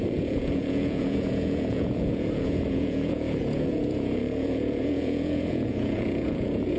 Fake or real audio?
fake